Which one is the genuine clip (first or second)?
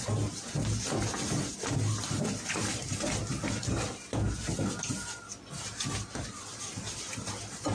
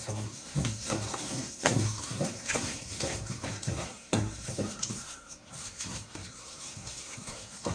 first